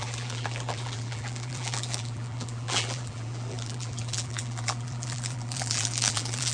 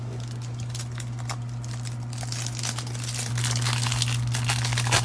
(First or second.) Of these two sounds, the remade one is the first